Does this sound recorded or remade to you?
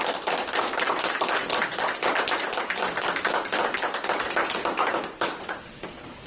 recorded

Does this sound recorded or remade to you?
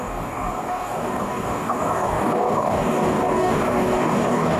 remade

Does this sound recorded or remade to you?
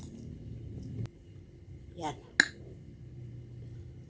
recorded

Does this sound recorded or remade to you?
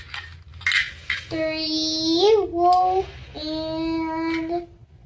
recorded